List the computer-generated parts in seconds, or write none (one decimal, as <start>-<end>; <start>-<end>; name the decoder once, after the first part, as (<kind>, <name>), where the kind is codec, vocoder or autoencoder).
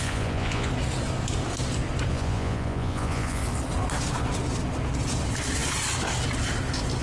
0.0-0.7 (vocoder, Vocos); 2.1-3.4